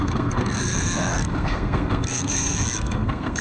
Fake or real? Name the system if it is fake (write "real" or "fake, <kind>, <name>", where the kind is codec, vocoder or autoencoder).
fake, codec, SNAC